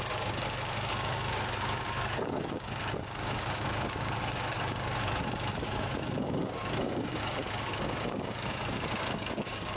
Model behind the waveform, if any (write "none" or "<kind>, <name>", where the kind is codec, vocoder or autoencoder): codec, DAC